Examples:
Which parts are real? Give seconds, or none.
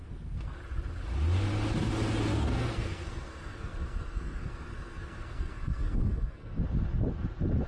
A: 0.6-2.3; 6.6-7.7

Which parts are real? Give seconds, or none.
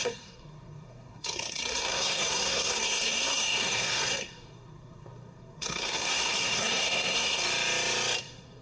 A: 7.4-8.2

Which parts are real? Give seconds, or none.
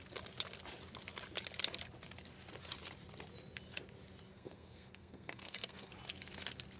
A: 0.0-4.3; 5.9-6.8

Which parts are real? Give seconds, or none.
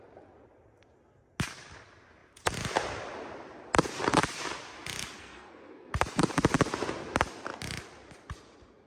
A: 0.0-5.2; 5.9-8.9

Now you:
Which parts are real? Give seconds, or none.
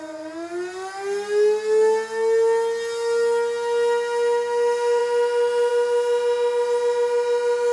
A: 0.0-7.7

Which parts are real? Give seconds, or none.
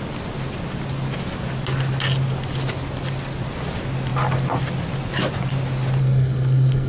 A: 0.0-6.0